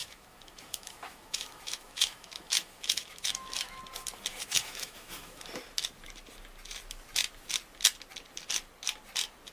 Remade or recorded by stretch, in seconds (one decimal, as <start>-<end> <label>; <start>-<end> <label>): 0.0-3.8 remade; 3.8-4.3 recorded; 4.3-5.4 remade; 5.4-9.5 recorded